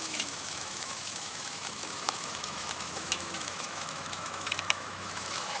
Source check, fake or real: fake